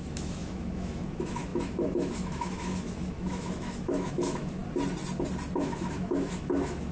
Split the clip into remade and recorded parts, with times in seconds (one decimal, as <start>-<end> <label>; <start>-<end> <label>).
0.0-4.6 remade; 4.6-5.6 recorded; 5.6-6.9 remade